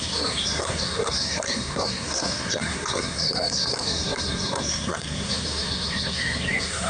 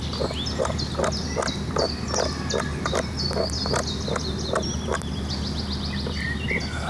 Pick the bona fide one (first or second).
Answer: second